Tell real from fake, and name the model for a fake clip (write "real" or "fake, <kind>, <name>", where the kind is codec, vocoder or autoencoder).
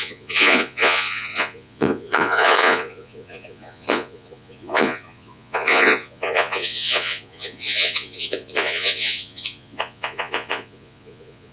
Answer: fake, vocoder, Vocos